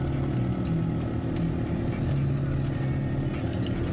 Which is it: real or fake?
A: real